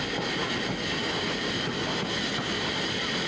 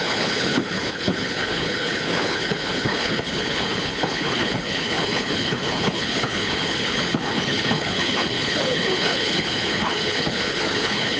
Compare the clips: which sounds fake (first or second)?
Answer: second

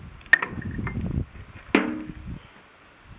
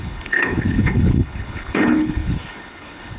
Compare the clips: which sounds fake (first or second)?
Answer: second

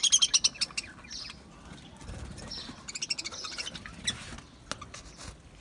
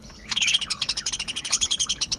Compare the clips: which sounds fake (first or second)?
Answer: second